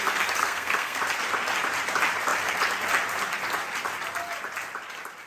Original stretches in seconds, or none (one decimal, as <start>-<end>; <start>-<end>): 0.0-0.4; 1.0-5.3

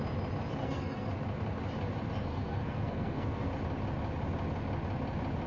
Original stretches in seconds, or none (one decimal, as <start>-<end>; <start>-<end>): 0.0-0.6; 1.1-2.3; 3.5-5.5

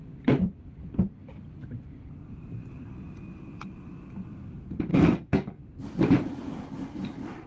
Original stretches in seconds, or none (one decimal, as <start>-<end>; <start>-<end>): 0.0-4.9; 5.6-7.5

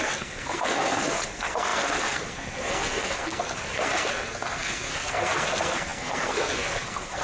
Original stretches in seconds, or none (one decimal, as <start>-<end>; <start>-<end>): none

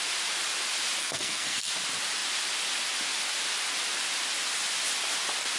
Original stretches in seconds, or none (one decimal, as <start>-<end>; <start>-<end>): 0.0-1.0; 1.7-5.6

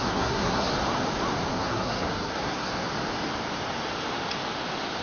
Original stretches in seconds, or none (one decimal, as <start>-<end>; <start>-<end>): 0.7-1.5; 2.9-5.0

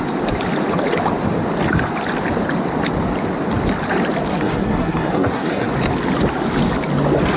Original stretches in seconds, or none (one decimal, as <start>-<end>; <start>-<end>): 0.0-4.3; 5.7-7.4